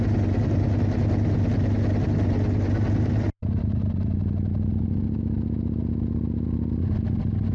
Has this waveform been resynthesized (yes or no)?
no